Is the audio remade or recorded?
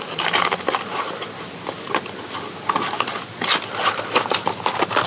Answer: recorded